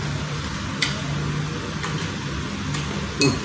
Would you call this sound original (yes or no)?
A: yes